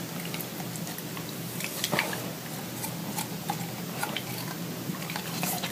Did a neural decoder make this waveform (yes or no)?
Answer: no